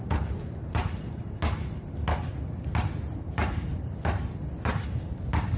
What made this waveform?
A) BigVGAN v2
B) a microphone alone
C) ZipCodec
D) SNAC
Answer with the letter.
B